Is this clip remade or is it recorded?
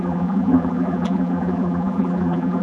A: remade